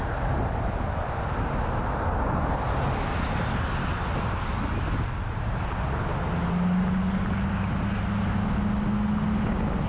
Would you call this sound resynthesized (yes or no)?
no